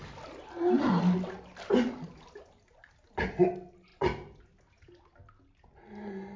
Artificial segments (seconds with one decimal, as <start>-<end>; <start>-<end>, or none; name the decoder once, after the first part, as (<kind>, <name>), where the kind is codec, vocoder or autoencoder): none